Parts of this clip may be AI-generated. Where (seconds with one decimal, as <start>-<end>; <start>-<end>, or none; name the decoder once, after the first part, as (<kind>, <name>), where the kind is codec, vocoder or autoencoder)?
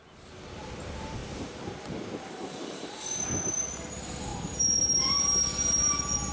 1.2-3.0 (vocoder, BigVGAN v2); 4.3-4.8